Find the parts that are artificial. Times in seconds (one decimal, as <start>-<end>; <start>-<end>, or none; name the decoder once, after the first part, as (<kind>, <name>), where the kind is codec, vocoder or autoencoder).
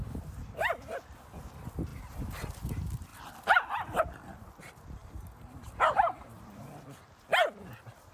1.9-2.5 (vocoder, BigVGAN v2); 5.0-6.6